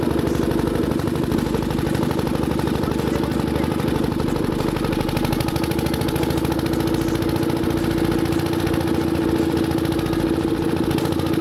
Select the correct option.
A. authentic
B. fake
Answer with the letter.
A